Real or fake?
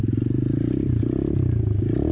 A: real